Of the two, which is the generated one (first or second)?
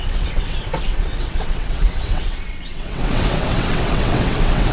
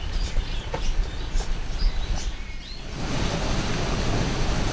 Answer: first